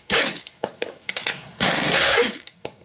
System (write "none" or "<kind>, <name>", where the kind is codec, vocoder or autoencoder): codec, SNAC